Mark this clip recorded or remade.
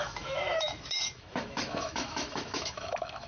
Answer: remade